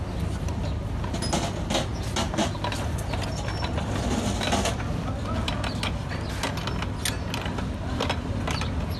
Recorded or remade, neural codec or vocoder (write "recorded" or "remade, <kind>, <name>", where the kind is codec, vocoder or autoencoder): recorded